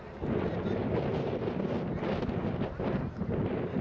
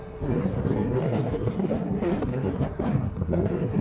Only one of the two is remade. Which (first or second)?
second